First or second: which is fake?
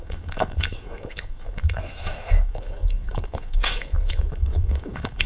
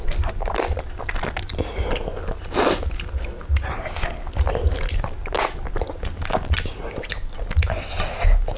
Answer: first